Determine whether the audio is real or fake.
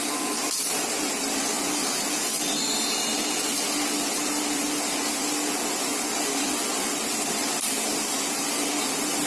real